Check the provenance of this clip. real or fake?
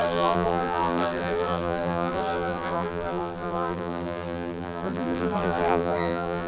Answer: fake